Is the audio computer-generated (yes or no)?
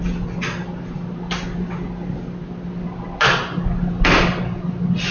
no